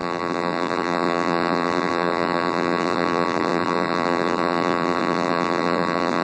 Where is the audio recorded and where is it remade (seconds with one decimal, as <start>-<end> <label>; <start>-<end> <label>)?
0.0-6.2 remade